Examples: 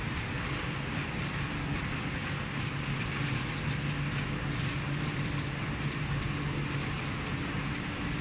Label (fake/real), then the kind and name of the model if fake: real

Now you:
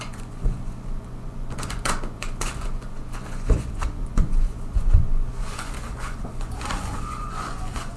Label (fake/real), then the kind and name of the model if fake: fake, vocoder, Vocos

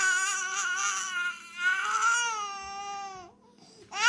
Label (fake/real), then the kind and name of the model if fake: real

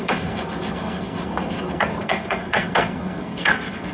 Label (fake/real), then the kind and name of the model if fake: fake, codec, SNAC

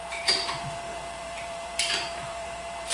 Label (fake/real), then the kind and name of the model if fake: fake, vocoder, BigVGAN v2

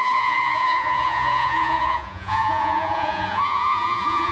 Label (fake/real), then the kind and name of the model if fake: fake, vocoder, Vocos